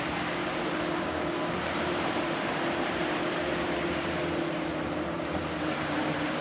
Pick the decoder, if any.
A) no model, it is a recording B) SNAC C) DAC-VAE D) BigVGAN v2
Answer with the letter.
D